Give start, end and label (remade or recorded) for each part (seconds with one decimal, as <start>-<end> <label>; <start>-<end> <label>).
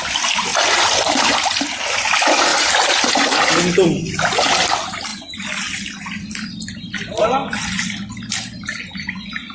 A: 0.0-9.5 recorded